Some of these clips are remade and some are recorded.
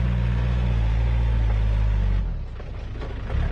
recorded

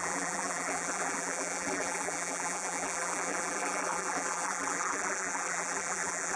remade